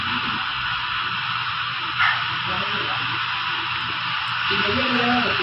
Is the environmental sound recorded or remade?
recorded